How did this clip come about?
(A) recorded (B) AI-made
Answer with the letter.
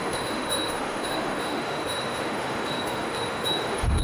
B